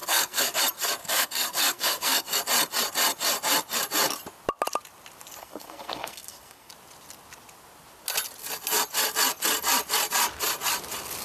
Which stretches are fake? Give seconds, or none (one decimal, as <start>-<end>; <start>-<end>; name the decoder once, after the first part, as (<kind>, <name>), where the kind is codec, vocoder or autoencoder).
0.0-0.6 (codec, SNAC); 1.0-2.4; 5.4-6.7